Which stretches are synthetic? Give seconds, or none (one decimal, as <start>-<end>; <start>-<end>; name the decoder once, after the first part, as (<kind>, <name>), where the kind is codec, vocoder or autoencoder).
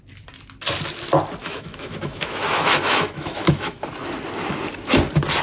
1.4-3.8 (autoencoder, DAC-VAE)